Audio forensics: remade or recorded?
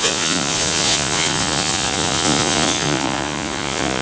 remade